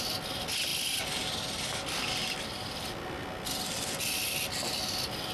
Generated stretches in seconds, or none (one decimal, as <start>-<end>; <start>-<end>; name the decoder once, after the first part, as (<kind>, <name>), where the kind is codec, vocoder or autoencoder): none